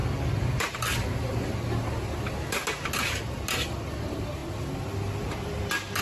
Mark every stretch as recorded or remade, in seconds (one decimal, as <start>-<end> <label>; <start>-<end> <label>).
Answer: 0.0-6.0 recorded